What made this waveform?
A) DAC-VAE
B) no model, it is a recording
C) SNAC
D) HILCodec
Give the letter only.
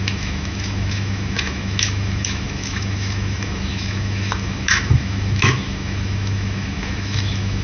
A